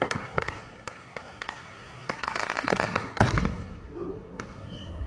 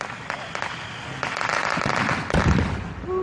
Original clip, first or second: second